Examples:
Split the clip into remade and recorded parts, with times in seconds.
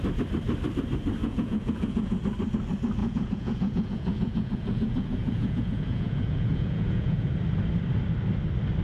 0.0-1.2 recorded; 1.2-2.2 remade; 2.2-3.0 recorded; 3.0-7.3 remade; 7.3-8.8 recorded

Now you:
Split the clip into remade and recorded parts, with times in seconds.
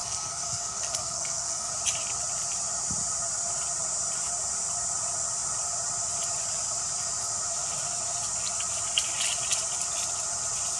0.0-1.7 remade; 1.7-10.8 recorded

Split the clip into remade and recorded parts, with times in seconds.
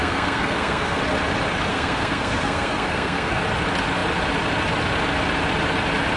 0.0-1.0 remade; 1.0-1.7 recorded; 1.7-3.4 remade; 3.4-6.2 recorded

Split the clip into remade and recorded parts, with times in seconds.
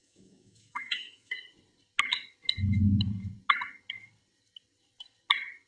0.0-1.3 remade; 1.3-5.7 recorded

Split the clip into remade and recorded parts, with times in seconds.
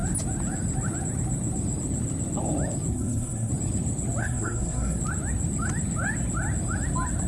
0.0-2.9 recorded; 2.9-3.5 remade; 3.5-4.2 recorded; 4.2-5.0 remade; 5.0-7.3 recorded